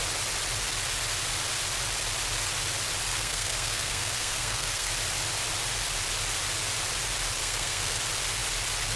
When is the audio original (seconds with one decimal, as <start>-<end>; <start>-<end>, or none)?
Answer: 0.0-3.1; 4.9-7.4; 8.0-9.0